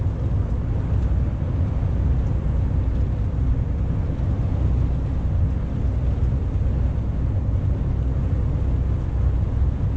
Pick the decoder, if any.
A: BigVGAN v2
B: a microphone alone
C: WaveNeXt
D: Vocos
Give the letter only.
B